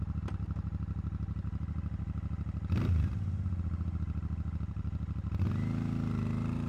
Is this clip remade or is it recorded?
recorded